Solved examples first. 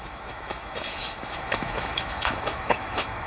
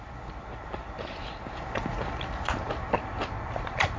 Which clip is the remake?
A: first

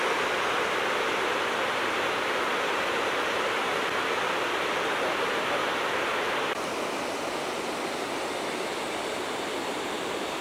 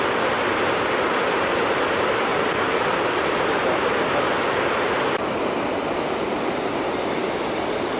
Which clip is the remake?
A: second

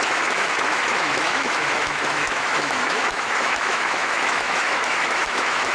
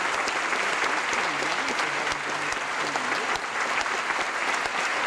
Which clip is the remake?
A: first